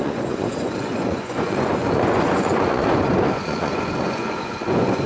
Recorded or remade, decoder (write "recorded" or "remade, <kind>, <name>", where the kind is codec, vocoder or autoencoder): remade, vocoder, Vocos